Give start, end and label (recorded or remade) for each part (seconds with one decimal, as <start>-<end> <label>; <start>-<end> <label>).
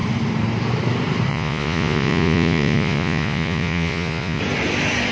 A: 0.0-1.3 recorded; 1.3-4.4 remade; 4.4-5.1 recorded